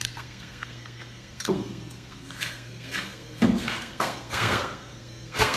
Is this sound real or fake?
fake